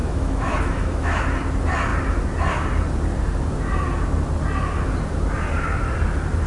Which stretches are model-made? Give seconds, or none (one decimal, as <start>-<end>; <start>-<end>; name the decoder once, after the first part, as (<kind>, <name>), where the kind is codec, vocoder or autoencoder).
0.0-1.2 (autoencoder, DAC-VAE)